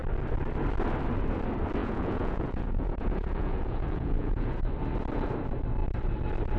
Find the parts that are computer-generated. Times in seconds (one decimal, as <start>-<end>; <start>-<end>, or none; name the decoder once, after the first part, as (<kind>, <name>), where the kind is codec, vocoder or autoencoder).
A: 1.8-4.7 (vocoder, Vocos)